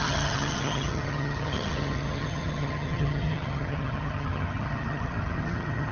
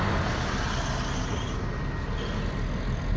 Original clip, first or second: second